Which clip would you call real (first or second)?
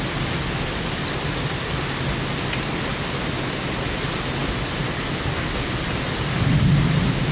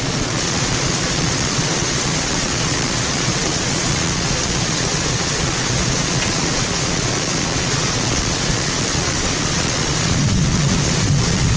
first